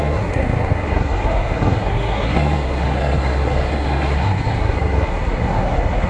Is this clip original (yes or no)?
no